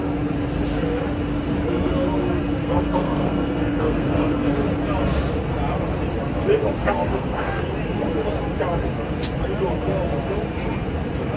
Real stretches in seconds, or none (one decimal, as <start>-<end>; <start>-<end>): 0.0-2.6; 4.5-6.8; 7.6-11.4

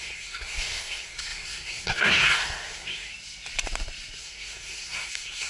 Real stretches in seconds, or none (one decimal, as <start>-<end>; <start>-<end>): 3.1-4.2

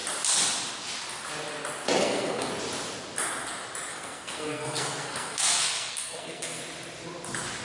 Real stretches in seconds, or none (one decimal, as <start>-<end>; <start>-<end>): 0.0-2.0; 2.5-3.9; 6.6-7.6

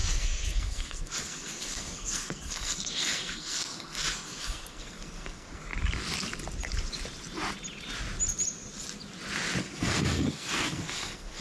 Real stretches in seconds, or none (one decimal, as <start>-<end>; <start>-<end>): 5.7-9.6

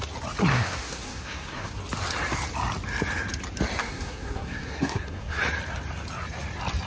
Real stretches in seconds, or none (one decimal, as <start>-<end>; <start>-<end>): 0.0-0.5; 1.8-3.8; 5.4-6.9

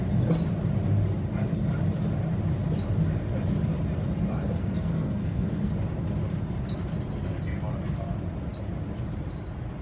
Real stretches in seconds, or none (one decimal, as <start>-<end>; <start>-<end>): 0.0-4.6; 5.7-9.8

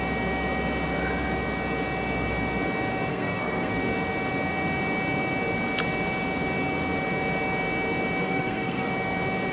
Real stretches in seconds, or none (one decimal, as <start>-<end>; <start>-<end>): 0.0-3.1; 3.7-8.2; 8.9-9.5

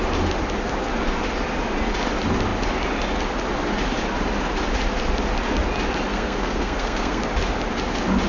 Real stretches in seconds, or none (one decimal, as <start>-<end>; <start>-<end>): 0.0-6.1; 7.2-8.3